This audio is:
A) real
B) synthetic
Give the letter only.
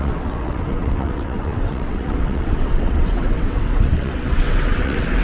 B